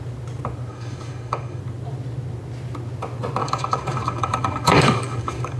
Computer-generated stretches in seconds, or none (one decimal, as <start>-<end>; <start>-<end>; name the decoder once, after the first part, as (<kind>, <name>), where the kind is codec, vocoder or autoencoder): 0.7-1.6 (codec, DAC); 3.4-5.6

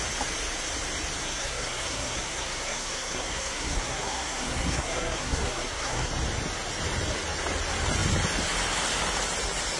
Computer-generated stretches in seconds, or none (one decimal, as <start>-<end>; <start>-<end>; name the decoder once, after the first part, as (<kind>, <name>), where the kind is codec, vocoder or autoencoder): 1.2-6.1 (codec, SNAC)

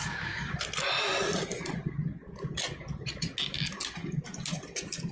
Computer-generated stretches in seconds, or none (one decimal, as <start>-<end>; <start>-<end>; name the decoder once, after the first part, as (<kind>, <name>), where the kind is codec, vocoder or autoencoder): 0.0-0.6 (codec, DAC)

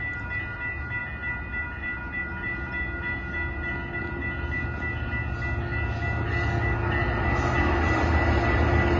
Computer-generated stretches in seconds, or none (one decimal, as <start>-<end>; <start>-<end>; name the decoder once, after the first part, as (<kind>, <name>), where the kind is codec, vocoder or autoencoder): none

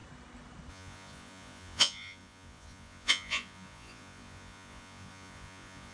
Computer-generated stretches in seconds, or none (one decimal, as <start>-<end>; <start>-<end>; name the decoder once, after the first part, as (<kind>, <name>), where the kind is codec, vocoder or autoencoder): 0.7-5.9 (vocoder, Vocos)